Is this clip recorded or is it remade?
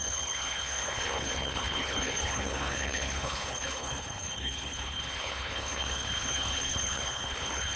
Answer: remade